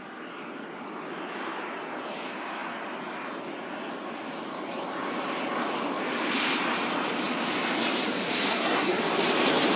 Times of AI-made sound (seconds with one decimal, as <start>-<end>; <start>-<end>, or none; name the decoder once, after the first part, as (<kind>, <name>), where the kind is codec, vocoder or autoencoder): 8.5-9.0 (codec, SNAC)